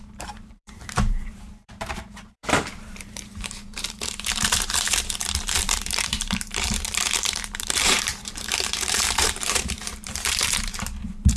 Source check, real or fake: fake